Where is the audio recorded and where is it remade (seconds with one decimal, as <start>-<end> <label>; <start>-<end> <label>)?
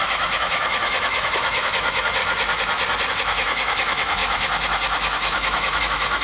0.0-2.2 remade; 2.2-3.1 recorded; 3.1-6.2 remade